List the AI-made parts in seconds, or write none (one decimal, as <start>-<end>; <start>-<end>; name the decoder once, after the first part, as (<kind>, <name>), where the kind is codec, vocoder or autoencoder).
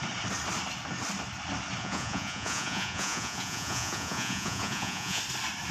1.8-5.2 (vocoder, Vocos)